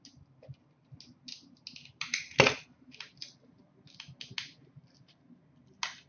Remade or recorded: recorded